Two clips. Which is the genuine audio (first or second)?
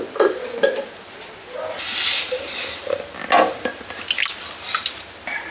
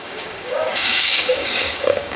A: first